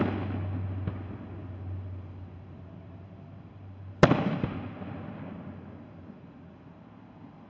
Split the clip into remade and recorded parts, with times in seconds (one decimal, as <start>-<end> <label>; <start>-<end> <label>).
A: 0.0-7.5 recorded

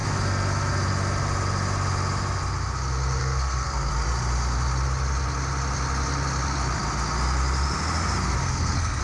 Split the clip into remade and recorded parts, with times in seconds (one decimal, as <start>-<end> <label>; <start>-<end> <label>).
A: 0.0-3.2 recorded; 3.2-3.9 remade; 3.9-8.4 recorded; 8.4-9.0 remade